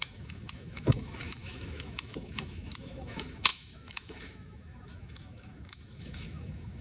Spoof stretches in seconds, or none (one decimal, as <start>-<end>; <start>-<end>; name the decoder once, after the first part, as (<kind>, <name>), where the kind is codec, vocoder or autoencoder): 0.0-6.8 (autoencoder, DAC-VAE)